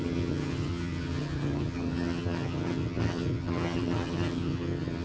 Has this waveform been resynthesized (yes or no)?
yes